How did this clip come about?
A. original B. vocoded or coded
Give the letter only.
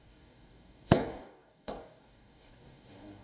B